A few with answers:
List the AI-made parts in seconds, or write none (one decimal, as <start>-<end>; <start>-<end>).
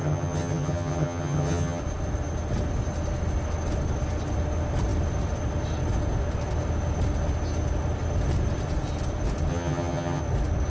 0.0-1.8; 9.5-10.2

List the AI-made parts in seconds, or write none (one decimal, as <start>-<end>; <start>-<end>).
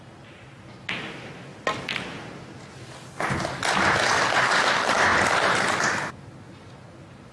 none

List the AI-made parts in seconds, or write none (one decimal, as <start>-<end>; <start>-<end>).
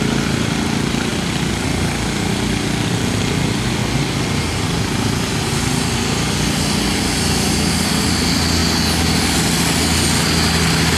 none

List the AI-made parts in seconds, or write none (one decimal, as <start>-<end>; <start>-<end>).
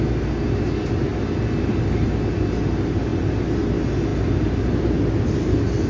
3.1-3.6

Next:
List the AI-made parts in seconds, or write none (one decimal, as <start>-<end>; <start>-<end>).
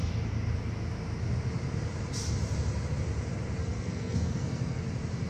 3.6-4.8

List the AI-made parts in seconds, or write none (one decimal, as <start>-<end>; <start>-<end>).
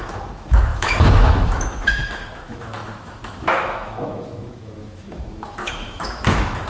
0.0-6.7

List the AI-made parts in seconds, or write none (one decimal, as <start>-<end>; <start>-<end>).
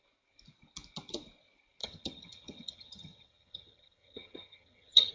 1.8-5.1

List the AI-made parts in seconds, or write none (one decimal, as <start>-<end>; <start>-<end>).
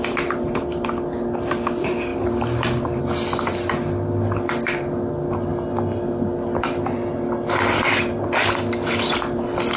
none